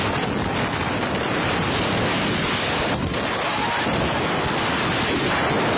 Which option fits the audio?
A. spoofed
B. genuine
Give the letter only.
B